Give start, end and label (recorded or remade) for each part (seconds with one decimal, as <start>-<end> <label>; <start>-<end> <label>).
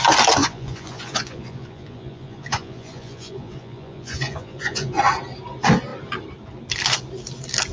0.0-0.4 recorded; 0.4-5.0 remade; 5.0-7.7 recorded